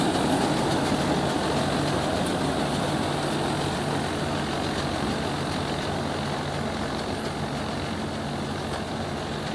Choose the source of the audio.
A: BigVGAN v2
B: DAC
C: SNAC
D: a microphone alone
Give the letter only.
D